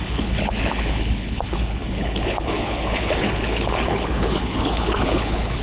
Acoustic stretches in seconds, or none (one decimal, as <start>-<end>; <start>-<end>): none